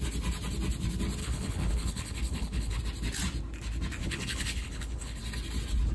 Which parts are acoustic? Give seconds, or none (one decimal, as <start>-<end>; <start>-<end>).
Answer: 0.0-1.2; 2.8-4.0; 5.2-5.9